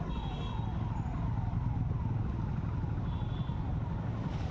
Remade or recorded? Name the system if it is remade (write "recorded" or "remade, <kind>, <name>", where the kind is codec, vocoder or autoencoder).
recorded